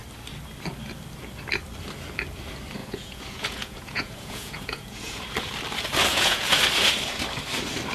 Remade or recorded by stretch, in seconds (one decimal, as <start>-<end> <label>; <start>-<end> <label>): 0.0-2.8 recorded; 2.8-5.1 remade; 5.1-6.1 recorded; 6.1-6.6 remade; 6.6-7.9 recorded